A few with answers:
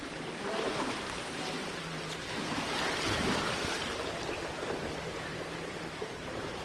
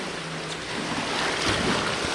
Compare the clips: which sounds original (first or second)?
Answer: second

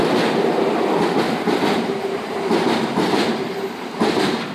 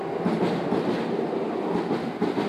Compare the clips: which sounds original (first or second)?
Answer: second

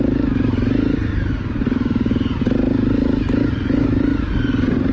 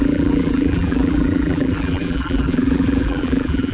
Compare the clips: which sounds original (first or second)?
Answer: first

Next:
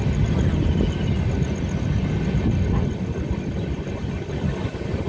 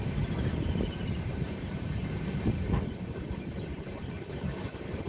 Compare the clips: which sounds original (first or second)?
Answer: first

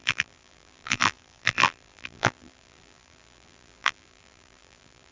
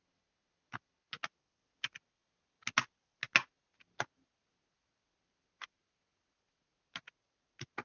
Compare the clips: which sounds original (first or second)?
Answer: second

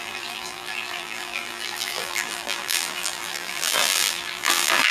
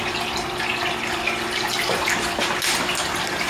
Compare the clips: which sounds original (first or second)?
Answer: second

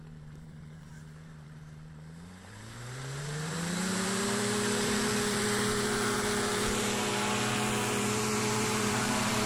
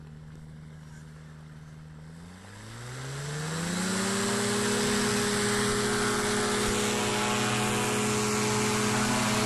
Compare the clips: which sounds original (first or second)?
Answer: second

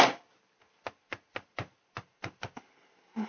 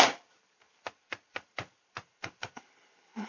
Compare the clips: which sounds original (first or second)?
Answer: first